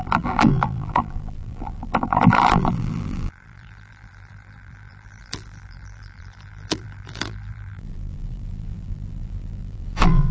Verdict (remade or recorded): remade